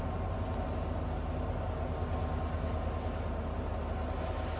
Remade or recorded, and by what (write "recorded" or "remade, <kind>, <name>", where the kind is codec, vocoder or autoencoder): recorded